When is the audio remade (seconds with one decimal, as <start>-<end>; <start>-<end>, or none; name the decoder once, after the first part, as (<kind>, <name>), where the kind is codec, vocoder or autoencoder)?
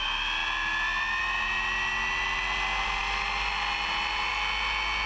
none